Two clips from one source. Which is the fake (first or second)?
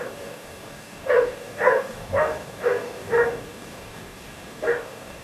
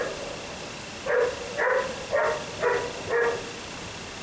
first